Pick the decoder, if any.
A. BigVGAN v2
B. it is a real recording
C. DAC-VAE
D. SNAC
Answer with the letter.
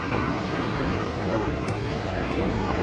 D